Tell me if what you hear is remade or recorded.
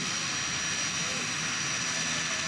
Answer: recorded